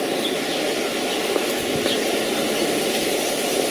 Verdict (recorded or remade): recorded